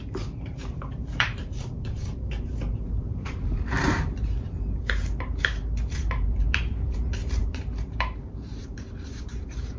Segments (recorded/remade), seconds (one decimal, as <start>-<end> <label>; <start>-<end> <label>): 0.0-9.8 remade